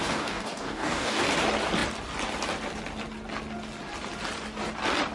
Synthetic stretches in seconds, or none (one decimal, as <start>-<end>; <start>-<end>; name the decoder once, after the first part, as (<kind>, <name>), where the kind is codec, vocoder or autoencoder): 0.0-1.2 (codec, DAC)